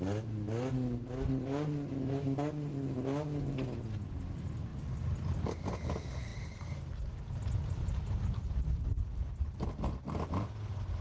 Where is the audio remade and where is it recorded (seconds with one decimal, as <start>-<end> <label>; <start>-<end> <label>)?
0.0-11.0 recorded